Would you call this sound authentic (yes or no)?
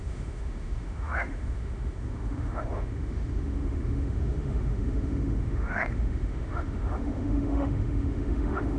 no